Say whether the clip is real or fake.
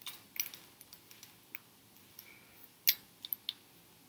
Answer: real